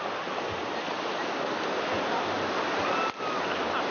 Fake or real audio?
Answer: real